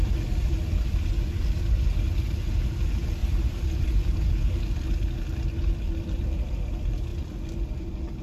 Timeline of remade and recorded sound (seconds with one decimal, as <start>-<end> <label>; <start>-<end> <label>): 0.0-3.2 recorded; 3.2-4.6 remade; 4.6-8.2 recorded